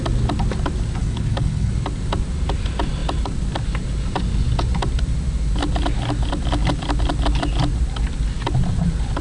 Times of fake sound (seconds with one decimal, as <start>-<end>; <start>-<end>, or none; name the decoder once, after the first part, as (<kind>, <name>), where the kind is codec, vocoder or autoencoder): 1.0-1.7 (codec, HILCodec)